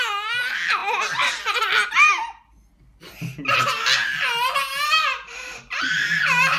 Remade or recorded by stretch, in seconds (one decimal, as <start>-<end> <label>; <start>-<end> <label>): 0.0-6.6 recorded